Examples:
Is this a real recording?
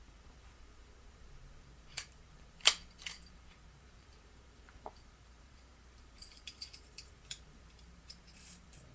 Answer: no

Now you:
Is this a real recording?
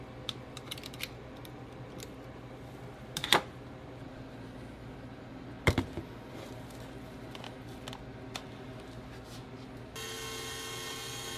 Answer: yes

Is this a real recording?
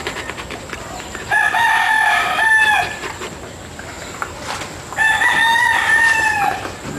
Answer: yes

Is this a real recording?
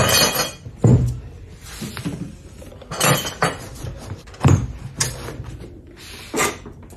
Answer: yes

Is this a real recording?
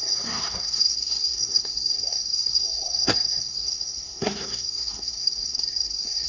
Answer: no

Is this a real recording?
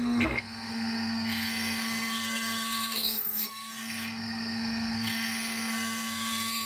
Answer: no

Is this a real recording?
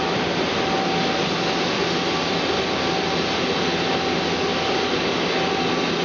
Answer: yes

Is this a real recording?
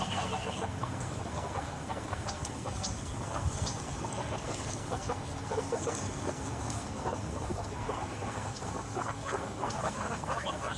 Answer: no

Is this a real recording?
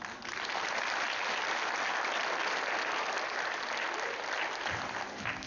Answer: yes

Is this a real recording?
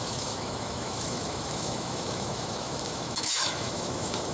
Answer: no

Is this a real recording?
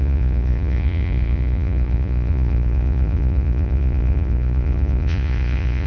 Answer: no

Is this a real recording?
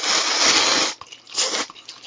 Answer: yes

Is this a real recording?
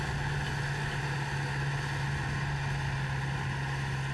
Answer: yes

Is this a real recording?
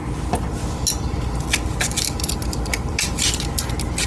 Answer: yes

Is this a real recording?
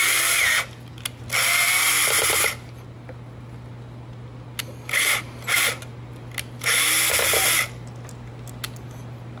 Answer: yes